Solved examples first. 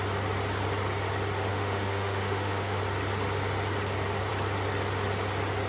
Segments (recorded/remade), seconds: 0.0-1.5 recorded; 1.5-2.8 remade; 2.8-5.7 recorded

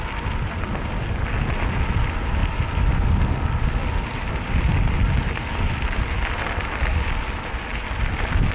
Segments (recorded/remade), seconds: 0.0-8.5 recorded

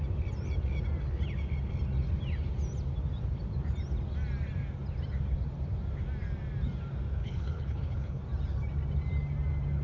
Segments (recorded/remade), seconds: 0.0-7.2 recorded; 7.2-8.2 remade; 8.2-9.8 recorded